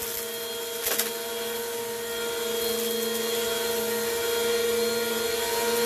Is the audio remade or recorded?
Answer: recorded